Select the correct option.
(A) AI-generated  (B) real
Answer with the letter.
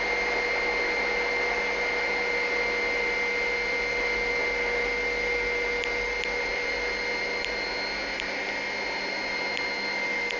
B